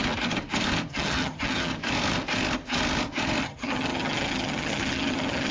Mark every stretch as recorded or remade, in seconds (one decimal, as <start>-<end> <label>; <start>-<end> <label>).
0.0-0.9 recorded; 0.9-1.7 remade; 1.7-3.4 recorded; 3.4-5.5 remade